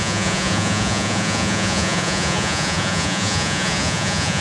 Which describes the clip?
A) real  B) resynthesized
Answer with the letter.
B